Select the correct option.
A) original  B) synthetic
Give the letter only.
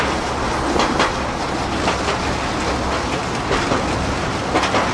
A